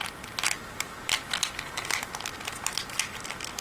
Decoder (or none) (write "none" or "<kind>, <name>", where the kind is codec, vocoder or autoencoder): none